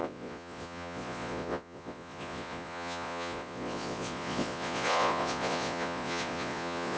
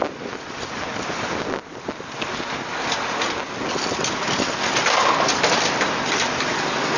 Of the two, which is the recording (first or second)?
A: second